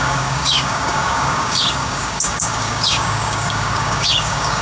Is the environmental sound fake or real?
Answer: fake